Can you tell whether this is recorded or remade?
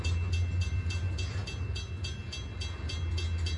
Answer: recorded